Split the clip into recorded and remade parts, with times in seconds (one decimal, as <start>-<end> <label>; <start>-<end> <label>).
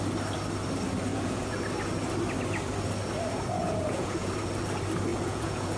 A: 0.0-1.1 recorded; 1.1-1.6 remade; 1.6-3.6 recorded; 3.6-4.4 remade; 4.4-5.1 recorded; 5.1-5.8 remade